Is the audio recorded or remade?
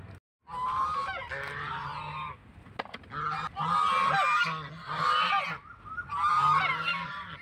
recorded